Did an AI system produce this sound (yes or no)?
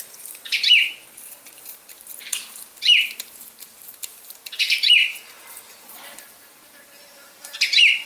yes